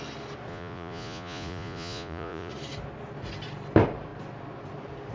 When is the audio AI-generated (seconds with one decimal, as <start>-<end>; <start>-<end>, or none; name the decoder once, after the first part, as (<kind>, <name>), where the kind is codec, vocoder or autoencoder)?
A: 0.5-2.5 (vocoder, Vocos)